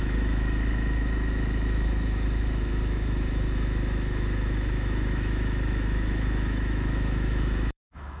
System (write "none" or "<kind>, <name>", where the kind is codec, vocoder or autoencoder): autoencoder, DAC-VAE